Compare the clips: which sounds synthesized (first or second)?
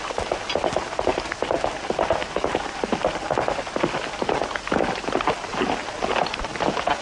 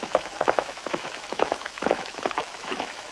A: second